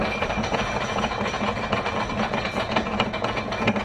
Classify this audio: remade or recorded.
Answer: remade